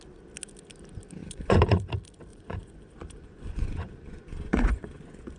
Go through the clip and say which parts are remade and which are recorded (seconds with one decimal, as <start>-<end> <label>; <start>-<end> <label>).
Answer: 0.0-1.2 recorded; 1.2-1.9 remade; 1.9-2.3 recorded; 2.3-5.4 remade